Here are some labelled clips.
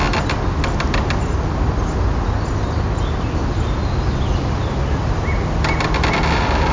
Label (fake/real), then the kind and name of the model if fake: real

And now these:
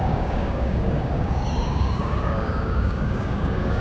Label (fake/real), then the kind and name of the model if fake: fake, codec, DAC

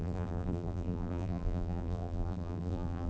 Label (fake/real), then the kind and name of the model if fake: fake, vocoder, BigVGAN v2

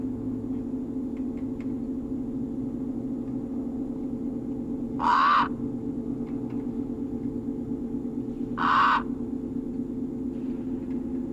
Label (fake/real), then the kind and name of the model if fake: real